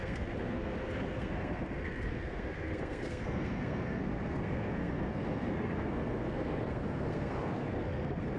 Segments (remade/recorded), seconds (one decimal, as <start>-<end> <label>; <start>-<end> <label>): 0.0-8.4 remade